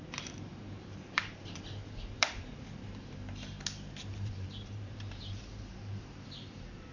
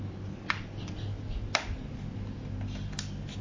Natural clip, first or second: second